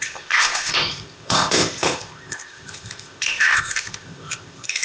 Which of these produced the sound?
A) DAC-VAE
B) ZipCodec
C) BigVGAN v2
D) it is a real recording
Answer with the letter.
B